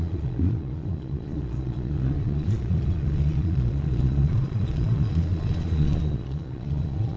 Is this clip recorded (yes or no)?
no